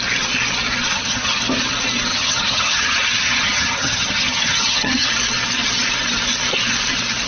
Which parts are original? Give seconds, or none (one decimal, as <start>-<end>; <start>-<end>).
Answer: 0.0-0.9; 1.4-2.1; 5.1-7.3